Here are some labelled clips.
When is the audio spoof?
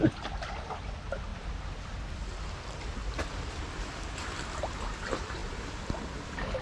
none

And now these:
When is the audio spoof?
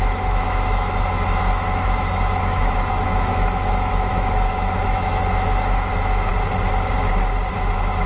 0.0-6.3 (autoencoder, DAC-VAE); 7.5-8.1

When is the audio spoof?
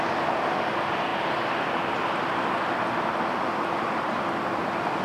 none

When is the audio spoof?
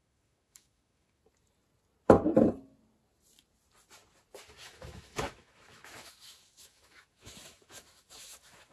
0.0-1.2 (autoencoder, DAC-VAE); 4.6-8.7